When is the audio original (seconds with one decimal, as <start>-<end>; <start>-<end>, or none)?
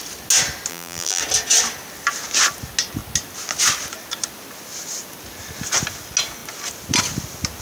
0.0-0.7; 1.2-7.6